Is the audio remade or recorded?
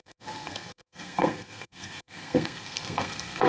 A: remade